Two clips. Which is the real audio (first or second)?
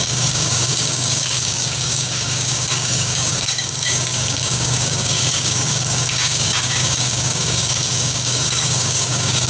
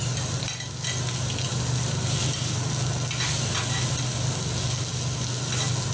second